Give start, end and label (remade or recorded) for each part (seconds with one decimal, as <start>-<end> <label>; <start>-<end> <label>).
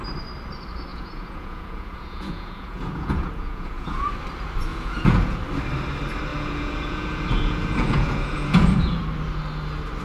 0.0-0.9 recorded; 0.9-4.1 remade; 4.1-4.7 recorded; 4.7-5.4 remade; 5.4-6.3 recorded; 6.3-9.0 remade; 9.0-10.0 recorded